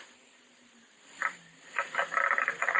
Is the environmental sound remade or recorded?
recorded